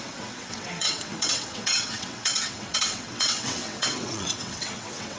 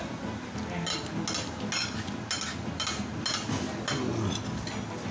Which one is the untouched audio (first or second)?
second